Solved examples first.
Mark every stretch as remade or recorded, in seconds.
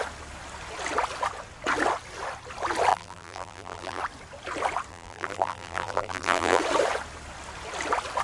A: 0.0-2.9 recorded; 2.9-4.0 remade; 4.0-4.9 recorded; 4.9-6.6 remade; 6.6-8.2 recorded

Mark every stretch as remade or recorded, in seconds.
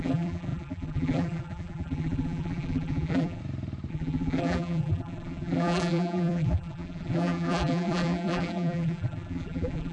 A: 0.0-3.4 remade; 3.4-3.9 recorded; 3.9-9.9 remade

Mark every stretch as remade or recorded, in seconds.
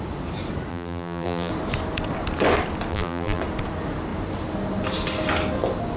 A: 0.0-0.7 recorded; 0.7-1.5 remade; 1.5-2.9 recorded; 2.9-3.4 remade; 3.4-6.0 recorded